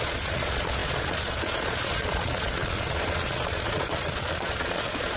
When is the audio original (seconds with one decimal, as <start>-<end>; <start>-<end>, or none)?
none